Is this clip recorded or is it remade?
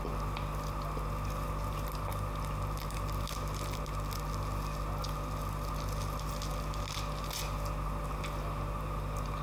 recorded